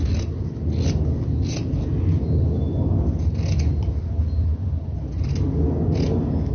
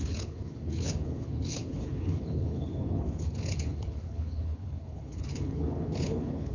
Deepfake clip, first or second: second